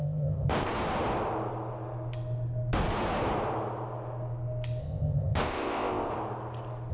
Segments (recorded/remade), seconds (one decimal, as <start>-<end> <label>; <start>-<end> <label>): 0.0-0.7 remade; 0.7-4.8 recorded; 4.8-6.1 remade; 6.1-6.9 recorded